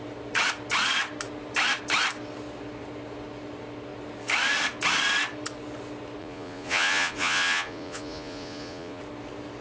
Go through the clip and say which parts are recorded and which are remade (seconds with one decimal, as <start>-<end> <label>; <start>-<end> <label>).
0.0-6.2 recorded; 6.2-9.0 remade; 9.0-9.6 recorded